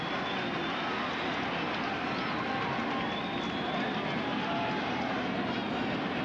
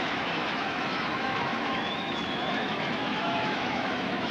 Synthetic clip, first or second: second